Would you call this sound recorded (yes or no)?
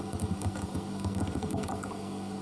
no